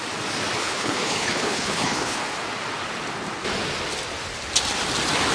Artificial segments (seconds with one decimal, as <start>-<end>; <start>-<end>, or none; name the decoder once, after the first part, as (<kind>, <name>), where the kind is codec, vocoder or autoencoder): 0.6-2.2 (codec, HILCodec)